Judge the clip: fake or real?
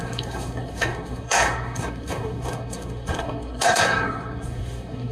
fake